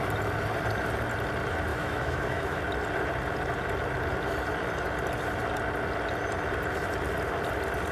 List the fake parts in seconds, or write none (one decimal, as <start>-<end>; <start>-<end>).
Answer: 1.7-2.6